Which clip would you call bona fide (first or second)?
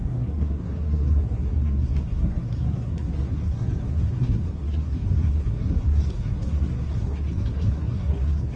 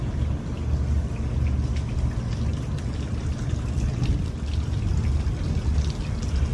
second